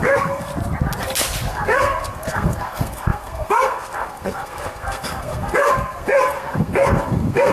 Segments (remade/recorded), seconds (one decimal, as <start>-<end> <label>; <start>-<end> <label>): 0.0-0.5 remade; 0.5-1.5 recorded; 1.5-7.5 remade